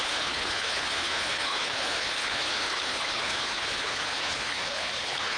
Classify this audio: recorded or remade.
remade